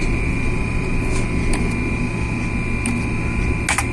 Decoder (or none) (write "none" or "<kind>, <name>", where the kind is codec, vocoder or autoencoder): none